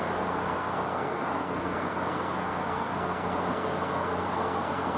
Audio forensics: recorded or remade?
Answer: remade